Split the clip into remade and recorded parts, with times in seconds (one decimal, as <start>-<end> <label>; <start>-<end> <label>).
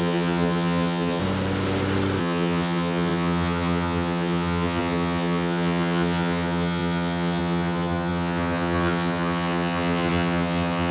0.0-1.2 remade; 1.2-2.2 recorded; 2.2-10.9 remade